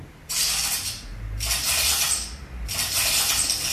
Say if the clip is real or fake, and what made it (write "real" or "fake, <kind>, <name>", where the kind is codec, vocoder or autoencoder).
real